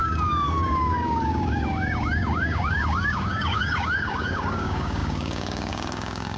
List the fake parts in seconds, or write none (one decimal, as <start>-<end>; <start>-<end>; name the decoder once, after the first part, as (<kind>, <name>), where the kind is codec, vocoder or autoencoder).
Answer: 0.0-6.4 (codec, DAC)